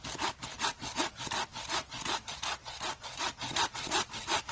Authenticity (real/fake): real